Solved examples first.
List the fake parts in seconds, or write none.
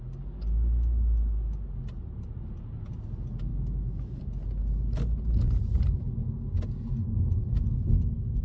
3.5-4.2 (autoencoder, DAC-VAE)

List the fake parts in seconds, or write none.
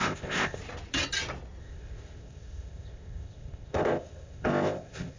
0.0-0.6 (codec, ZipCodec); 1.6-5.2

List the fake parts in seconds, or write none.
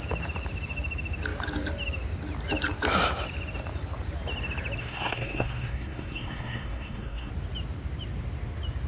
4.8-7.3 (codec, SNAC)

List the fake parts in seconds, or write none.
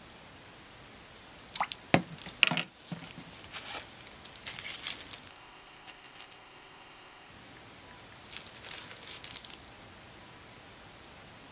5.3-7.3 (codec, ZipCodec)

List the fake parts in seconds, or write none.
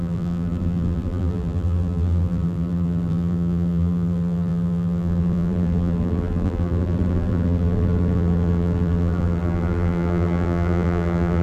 0.0-11.4 (vocoder, BigVGAN v2)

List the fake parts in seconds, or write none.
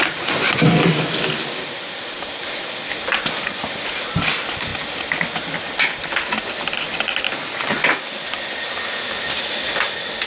none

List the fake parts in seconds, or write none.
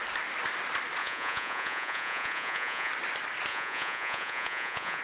1.0-2.9 (vocoder, Vocos); 3.5-5.0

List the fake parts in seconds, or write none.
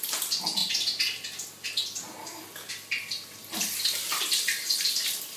none